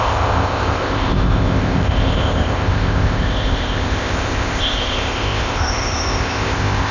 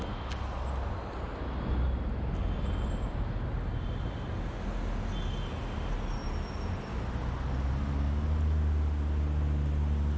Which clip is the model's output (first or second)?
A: first